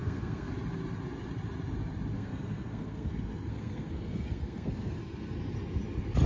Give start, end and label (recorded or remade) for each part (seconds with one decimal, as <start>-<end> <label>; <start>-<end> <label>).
0.0-0.5 remade; 0.5-2.1 recorded; 2.1-5.0 remade; 5.0-6.3 recorded